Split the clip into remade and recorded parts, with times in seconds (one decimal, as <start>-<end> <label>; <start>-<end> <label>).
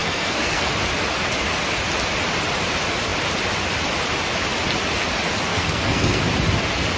0.0-0.7 remade; 0.7-5.5 recorded; 5.5-6.2 remade; 6.2-7.0 recorded